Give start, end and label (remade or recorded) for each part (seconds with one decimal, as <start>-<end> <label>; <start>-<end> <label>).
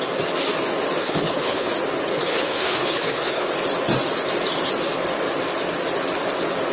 0.0-1.0 recorded; 1.0-1.7 remade; 1.7-2.1 recorded; 2.1-3.5 remade; 3.5-6.7 recorded